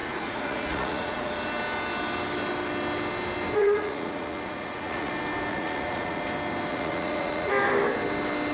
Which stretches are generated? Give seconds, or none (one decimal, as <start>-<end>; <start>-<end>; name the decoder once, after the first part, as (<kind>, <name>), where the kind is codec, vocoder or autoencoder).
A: 0.0-1.3 (vocoder, Vocos); 3.6-5.1; 5.5-6.2; 6.7-7.5